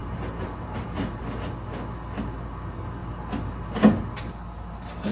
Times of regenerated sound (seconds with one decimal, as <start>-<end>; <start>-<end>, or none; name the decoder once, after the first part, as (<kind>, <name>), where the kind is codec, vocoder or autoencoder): 0.0-1.2 (vocoder, BigVGAN v2)